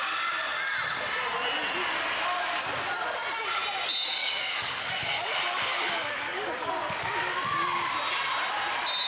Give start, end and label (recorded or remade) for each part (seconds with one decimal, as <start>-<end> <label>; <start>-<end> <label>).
0.0-4.2 recorded; 4.2-6.7 remade; 6.7-9.1 recorded